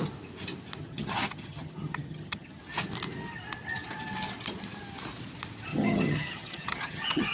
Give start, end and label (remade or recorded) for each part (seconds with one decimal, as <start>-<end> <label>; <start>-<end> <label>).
0.0-0.8 recorded; 0.8-2.6 remade; 2.6-5.7 recorded; 5.7-7.3 remade